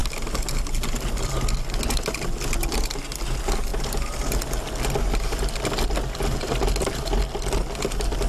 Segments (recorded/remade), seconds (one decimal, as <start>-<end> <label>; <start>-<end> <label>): 0.0-8.3 recorded

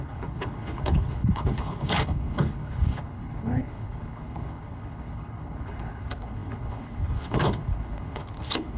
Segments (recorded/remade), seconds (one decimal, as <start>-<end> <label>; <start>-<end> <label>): 0.0-8.8 remade

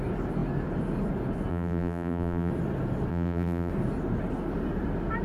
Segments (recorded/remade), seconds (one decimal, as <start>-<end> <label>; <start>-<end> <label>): 0.0-1.5 recorded; 1.5-2.5 remade; 2.5-3.1 recorded; 3.1-3.7 remade; 3.7-5.2 recorded